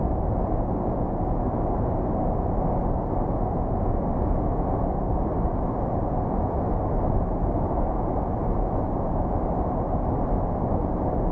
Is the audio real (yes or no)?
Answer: yes